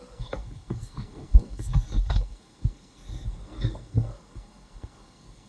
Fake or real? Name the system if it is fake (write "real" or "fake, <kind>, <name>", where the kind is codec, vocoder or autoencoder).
fake, codec, SNAC